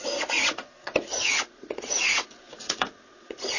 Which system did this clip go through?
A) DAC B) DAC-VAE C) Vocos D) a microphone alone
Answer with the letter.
C